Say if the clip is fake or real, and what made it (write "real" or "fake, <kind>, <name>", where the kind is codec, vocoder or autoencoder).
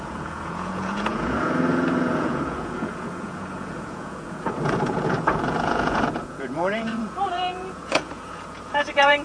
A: fake, vocoder, Vocos